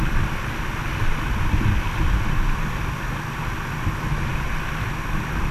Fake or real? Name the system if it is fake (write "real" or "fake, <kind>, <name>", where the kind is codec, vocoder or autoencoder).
real